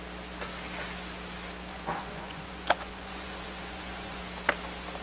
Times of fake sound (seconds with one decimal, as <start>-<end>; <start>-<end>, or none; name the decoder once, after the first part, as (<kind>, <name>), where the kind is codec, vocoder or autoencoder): 1.7-4.2 (vocoder, Vocos)